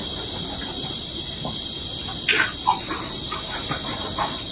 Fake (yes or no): no